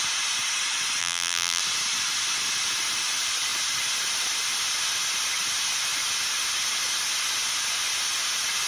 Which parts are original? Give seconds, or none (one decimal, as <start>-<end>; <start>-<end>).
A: 0.0-1.0; 1.6-8.7